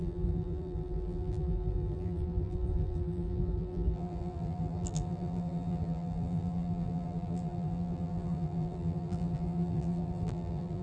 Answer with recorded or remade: remade